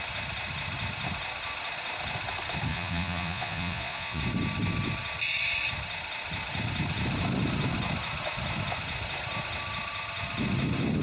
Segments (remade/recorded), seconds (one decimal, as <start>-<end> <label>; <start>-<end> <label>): 0.0-2.7 recorded; 2.7-4.2 remade; 4.2-11.0 recorded